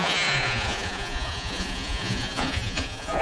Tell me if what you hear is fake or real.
fake